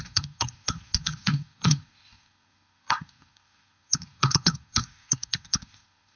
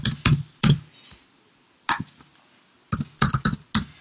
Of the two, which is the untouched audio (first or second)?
second